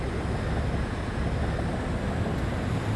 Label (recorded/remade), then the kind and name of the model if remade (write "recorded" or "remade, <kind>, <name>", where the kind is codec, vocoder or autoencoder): recorded